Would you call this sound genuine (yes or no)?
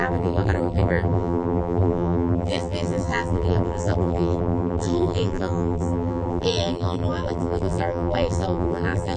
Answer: no